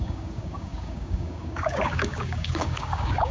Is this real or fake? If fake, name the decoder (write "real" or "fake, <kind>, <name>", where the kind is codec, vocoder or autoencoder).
fake, codec, DAC